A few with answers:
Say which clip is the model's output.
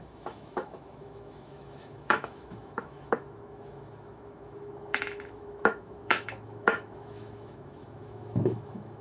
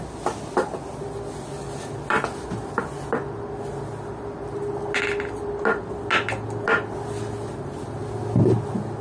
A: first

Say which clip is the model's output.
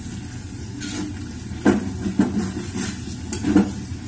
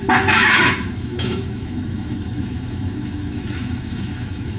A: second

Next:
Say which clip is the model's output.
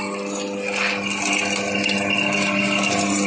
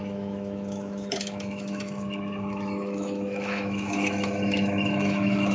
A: second